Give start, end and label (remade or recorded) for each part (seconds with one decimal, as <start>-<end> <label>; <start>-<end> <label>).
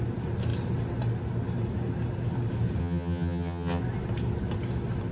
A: 0.0-2.8 recorded; 2.8-3.8 remade; 3.8-5.1 recorded